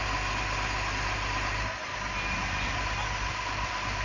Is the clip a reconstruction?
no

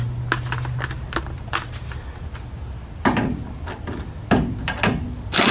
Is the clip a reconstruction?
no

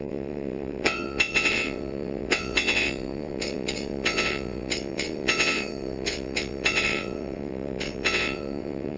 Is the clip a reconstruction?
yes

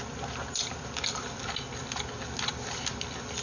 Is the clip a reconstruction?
no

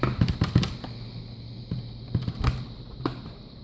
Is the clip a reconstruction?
no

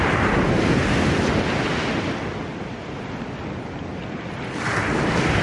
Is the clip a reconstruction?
no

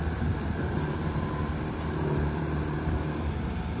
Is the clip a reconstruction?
yes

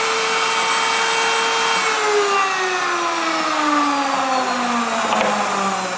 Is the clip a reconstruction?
no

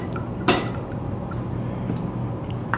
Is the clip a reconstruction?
yes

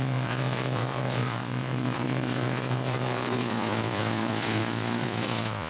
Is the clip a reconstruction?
yes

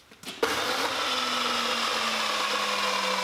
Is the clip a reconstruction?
no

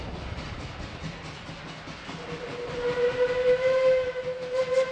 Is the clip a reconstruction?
no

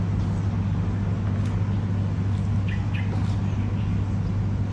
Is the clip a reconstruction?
no